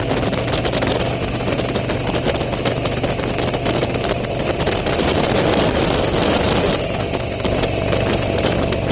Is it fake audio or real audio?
real